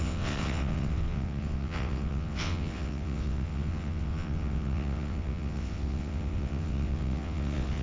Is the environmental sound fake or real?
fake